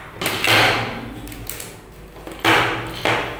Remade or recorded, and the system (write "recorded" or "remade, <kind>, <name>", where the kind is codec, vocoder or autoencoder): recorded